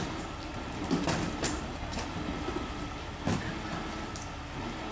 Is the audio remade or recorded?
recorded